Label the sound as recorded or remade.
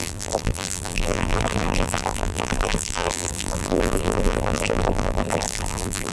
remade